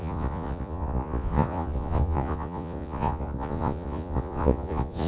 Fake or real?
fake